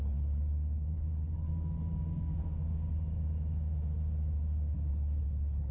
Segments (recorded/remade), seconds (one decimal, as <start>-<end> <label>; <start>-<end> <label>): 0.0-1.5 remade; 1.5-4.9 recorded; 4.9-5.7 remade